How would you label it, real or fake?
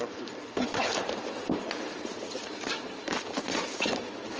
fake